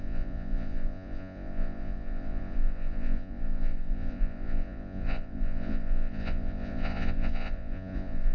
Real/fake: fake